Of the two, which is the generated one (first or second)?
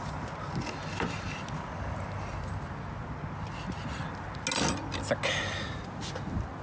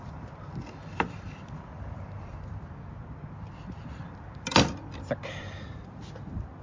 second